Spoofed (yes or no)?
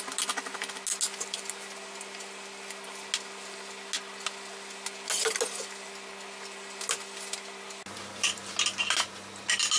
no